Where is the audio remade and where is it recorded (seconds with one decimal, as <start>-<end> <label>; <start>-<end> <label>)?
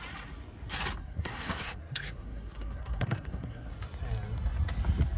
0.0-1.0 recorded; 1.0-3.7 remade; 3.7-5.2 recorded